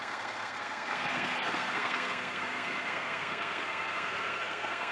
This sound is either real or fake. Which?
fake